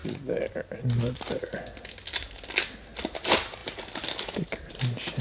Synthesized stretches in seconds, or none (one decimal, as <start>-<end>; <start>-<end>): none